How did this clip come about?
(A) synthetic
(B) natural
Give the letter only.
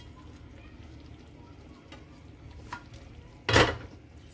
B